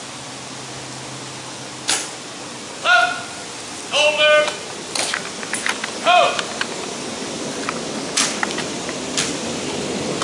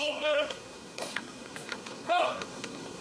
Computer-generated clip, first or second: second